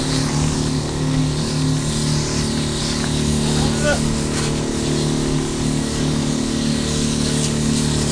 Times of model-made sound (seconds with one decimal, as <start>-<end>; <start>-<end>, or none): 0.0-1.2; 2.8-8.1